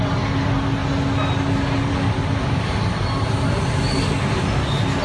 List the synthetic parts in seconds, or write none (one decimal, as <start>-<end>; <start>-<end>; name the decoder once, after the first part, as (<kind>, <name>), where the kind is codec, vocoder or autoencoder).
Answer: none